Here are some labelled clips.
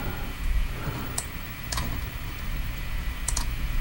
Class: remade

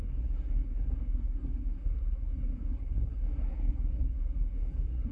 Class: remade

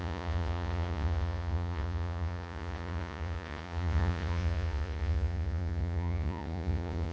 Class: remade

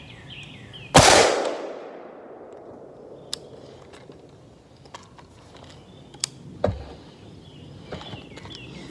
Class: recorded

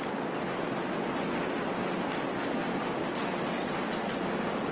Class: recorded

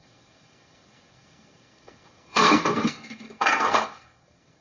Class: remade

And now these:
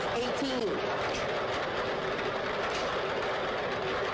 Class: recorded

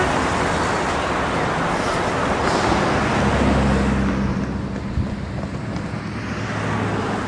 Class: recorded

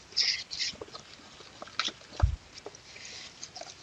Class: recorded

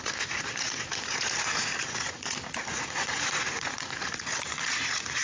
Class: remade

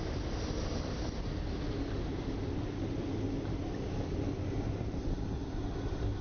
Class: recorded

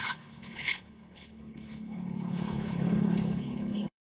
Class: remade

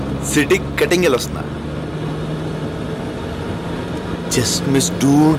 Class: recorded